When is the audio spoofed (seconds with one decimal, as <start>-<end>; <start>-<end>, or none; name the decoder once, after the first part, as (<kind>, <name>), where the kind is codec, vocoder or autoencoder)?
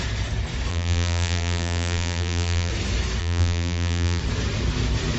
0.7-2.7 (vocoder, BigVGAN v2); 3.2-4.2